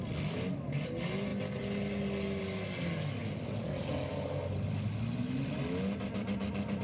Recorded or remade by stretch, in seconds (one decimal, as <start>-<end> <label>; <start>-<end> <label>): 0.0-6.8 recorded